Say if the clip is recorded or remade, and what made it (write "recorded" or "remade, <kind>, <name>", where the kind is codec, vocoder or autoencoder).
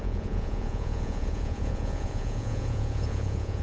remade, vocoder, Vocos